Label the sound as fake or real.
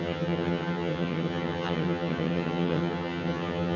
fake